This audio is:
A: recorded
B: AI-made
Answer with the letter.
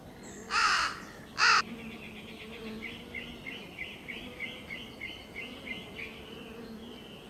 A